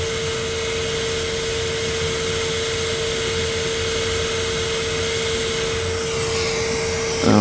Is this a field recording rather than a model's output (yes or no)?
yes